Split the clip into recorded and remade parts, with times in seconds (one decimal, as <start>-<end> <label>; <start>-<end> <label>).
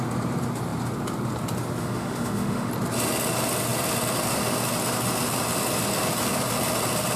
0.0-1.8 recorded; 1.8-2.7 remade; 2.7-7.2 recorded